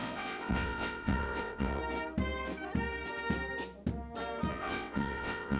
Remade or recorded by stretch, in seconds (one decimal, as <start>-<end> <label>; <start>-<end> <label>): 0.0-1.8 remade; 1.8-4.5 recorded; 4.5-5.6 remade